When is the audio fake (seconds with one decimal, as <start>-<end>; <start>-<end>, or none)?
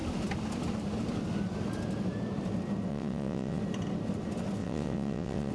2.9-3.6; 4.6-5.5